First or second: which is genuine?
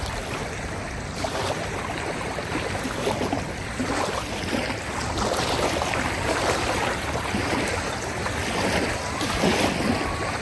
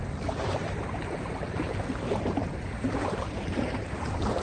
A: first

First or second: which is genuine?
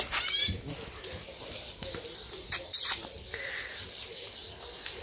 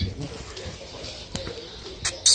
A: second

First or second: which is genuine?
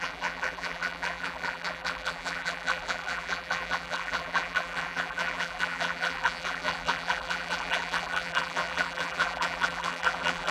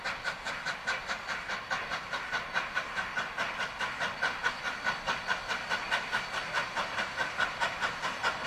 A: second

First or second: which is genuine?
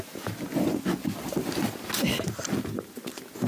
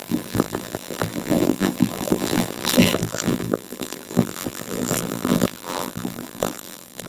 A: first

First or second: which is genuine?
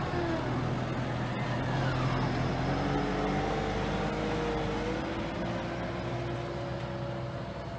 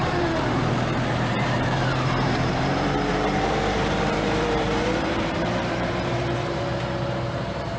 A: first